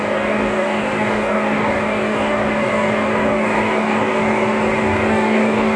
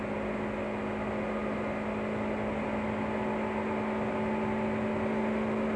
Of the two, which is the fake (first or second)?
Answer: first